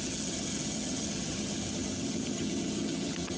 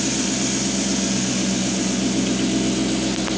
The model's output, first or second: first